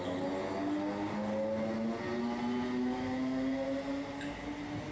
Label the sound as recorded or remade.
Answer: recorded